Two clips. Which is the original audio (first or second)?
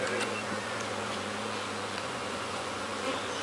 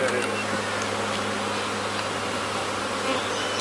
second